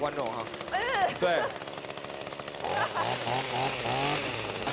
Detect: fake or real real